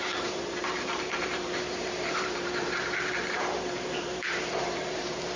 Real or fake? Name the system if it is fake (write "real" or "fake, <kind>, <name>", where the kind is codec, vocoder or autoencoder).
fake, vocoder, BigVGAN v2